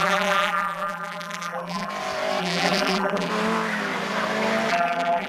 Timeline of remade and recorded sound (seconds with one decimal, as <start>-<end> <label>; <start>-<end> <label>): 0.0-1.9 remade; 1.9-2.4 recorded; 2.4-3.3 remade; 3.3-4.7 recorded; 4.7-5.3 remade